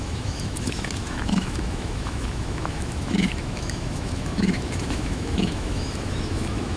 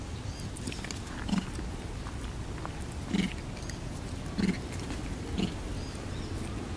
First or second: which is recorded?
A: second